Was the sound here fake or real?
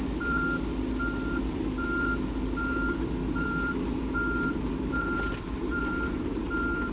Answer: fake